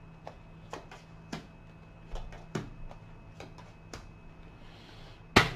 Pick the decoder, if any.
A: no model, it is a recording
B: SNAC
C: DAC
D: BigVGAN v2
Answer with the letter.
A